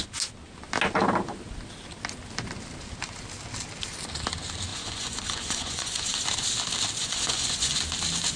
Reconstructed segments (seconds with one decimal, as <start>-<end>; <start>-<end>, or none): 4.7-6.2; 7.0-7.8